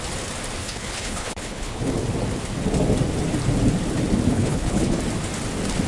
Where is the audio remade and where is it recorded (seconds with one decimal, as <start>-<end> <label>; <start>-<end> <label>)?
0.0-0.6 recorded; 0.6-1.9 remade; 1.9-4.3 recorded; 4.3-5.0 remade; 5.0-5.9 recorded